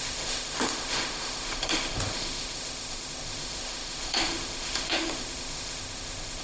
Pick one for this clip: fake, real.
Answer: fake